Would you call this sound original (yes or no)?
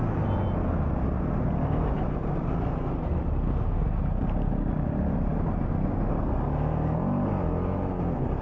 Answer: yes